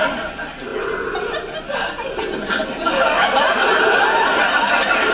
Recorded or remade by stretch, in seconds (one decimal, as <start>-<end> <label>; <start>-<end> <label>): 0.0-5.1 recorded